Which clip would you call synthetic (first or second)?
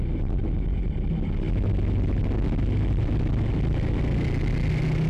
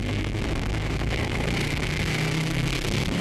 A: second